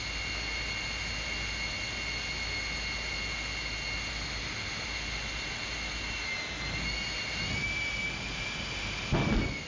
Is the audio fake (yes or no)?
no